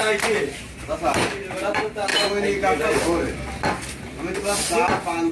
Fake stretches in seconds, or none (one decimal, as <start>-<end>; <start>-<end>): 0.0-1.0